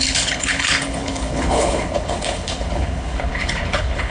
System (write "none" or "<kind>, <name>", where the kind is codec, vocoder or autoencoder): codec, HILCodec